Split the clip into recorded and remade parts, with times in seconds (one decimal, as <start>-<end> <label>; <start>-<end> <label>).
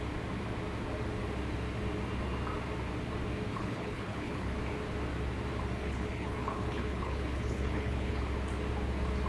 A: 0.0-3.5 recorded; 3.5-4.5 remade; 4.5-5.8 recorded; 5.8-8.2 remade; 8.2-9.3 recorded